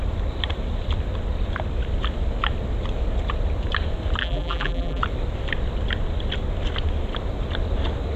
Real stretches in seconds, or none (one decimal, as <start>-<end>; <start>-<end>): 0.0-4.2; 5.0-8.2